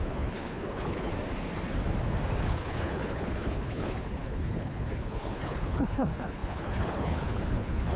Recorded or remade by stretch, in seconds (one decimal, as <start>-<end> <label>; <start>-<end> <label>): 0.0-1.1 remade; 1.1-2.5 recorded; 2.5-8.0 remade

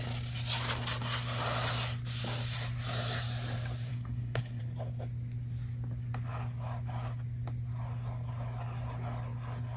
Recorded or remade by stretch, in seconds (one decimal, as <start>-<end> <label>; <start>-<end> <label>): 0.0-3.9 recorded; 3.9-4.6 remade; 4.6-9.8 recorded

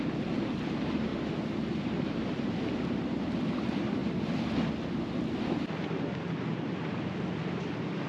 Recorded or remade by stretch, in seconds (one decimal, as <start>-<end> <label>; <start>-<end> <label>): 0.0-8.1 recorded